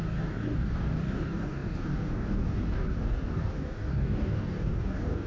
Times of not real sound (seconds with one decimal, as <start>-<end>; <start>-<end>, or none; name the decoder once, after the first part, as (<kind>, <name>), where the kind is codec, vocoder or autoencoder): 0.0-5.3 (codec, DAC)